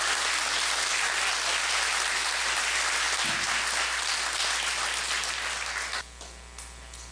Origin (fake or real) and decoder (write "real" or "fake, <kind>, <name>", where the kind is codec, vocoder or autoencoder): real